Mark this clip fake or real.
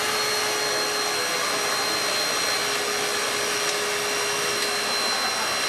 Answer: real